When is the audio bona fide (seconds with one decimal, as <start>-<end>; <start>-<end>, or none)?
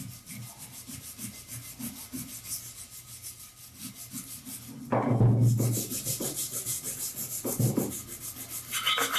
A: 0.0-9.2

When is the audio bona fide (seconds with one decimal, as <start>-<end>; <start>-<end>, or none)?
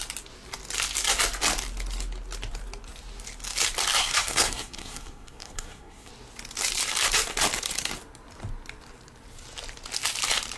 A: 0.0-4.0; 6.1-10.6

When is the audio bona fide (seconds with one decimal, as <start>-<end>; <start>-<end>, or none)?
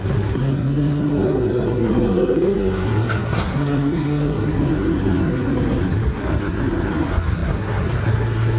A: none